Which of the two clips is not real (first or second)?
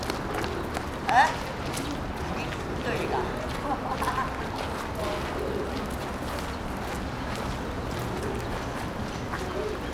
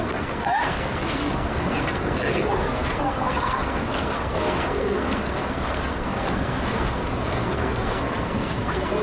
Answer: second